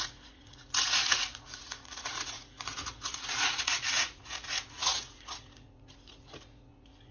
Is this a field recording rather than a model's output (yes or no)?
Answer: no